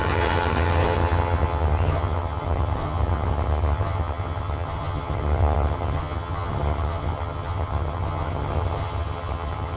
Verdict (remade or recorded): remade